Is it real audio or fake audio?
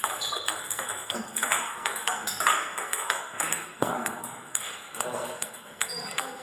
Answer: fake